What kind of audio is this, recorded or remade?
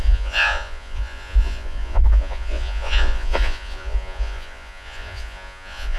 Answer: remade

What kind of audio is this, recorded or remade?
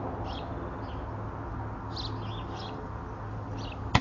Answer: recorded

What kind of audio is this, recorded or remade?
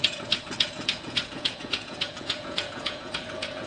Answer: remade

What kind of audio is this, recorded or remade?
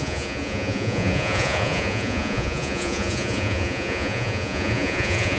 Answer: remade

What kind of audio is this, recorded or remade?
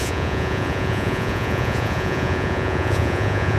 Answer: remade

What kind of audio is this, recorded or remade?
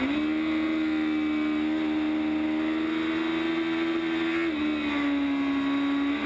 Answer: recorded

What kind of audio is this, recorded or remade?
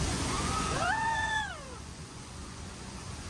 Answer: remade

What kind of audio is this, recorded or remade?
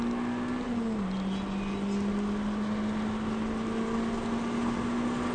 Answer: recorded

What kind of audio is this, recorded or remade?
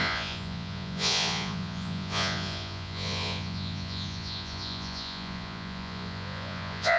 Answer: remade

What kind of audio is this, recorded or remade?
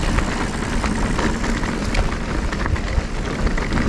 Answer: recorded